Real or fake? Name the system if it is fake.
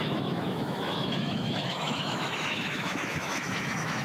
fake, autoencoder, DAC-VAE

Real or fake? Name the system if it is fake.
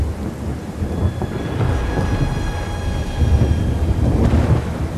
real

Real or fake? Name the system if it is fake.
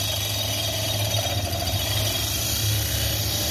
real